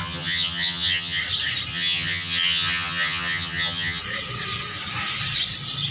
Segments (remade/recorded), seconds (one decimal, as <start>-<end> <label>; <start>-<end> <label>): 0.0-1.2 remade; 1.2-1.7 recorded; 1.7-4.0 remade; 4.0-5.9 recorded